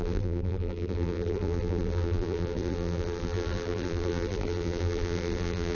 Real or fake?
fake